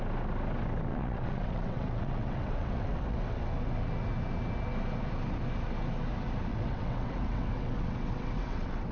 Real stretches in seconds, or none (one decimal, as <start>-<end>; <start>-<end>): 0.0-0.9; 3.4-6.5